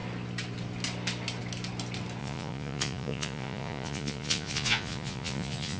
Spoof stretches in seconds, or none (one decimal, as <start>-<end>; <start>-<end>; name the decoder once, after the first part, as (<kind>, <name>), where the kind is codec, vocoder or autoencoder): 2.2-5.8 (vocoder, Vocos)